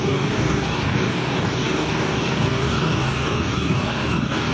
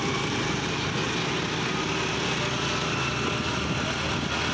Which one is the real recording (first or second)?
second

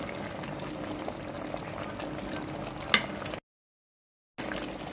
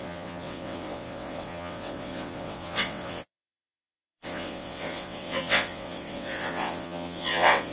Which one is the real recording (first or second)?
first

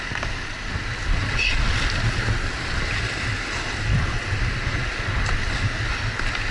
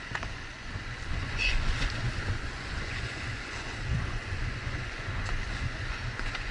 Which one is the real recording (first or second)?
first